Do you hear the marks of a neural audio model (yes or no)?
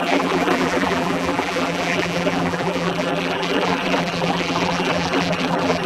yes